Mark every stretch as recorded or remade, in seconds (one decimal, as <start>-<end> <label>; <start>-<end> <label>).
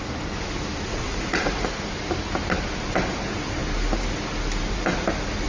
0.0-0.9 recorded; 0.9-1.7 remade; 1.7-5.5 recorded